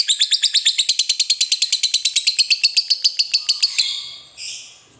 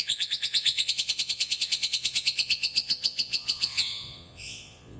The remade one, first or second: second